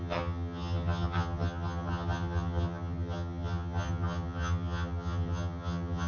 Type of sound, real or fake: fake